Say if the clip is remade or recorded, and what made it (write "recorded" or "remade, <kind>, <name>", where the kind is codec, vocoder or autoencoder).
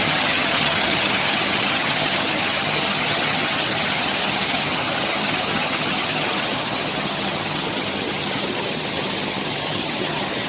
remade, vocoder, HiFi-GAN